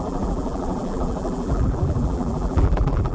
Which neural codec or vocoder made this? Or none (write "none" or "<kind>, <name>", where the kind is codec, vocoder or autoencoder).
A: vocoder, BigVGAN v2